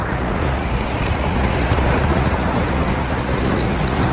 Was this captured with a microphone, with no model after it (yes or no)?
no